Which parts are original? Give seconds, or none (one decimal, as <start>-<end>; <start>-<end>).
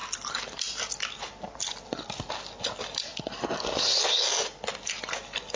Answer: 0.0-5.6